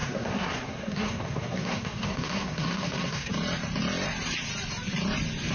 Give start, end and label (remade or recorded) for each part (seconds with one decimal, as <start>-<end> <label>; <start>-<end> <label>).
0.0-3.3 remade; 3.3-5.5 recorded